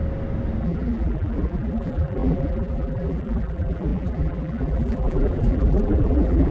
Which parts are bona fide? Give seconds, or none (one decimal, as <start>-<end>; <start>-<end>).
0.0-0.6